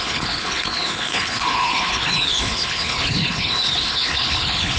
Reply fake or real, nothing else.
fake